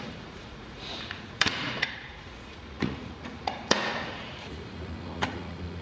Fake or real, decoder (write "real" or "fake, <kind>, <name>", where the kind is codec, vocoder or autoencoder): fake, vocoder, Vocos